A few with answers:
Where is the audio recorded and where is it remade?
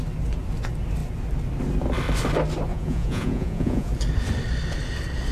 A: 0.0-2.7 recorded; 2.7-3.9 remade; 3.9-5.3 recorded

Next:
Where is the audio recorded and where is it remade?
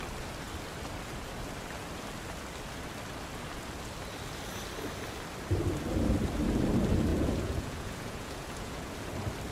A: 0.0-7.1 recorded; 7.1-8.9 remade; 8.9-9.5 recorded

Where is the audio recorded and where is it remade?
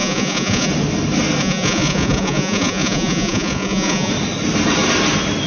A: 0.0-0.7 remade; 0.7-1.4 recorded; 1.4-4.1 remade; 4.1-5.5 recorded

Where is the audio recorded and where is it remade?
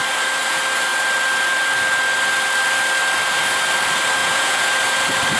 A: 0.0-4.2 recorded; 4.2-4.7 remade; 4.7-5.4 recorded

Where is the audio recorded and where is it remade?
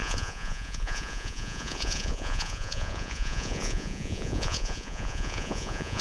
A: 0.0-6.0 remade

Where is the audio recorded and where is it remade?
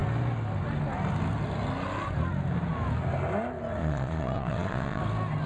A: 0.0-3.8 recorded; 3.8-5.0 remade; 5.0-5.5 recorded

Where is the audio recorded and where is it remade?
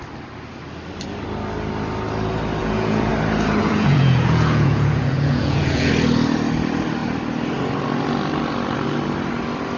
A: 0.0-2.6 recorded; 2.6-3.1 remade; 3.1-3.6 recorded; 3.6-5.9 remade; 5.9-9.8 recorded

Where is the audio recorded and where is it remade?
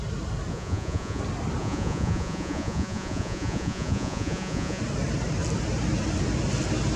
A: 0.0-0.5 recorded; 0.5-1.2 remade; 1.2-1.6 recorded; 1.6-4.8 remade; 4.8-7.0 recorded